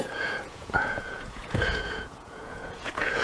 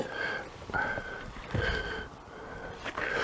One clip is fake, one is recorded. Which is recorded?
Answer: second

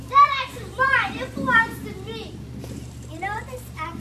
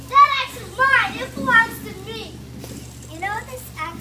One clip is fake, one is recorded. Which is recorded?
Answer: second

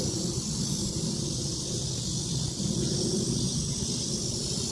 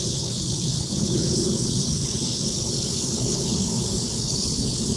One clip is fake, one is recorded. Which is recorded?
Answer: first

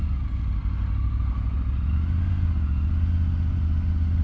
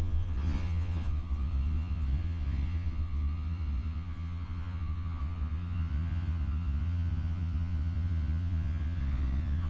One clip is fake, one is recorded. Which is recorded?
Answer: first